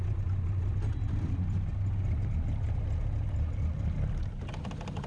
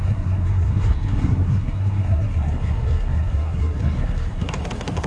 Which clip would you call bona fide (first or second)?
first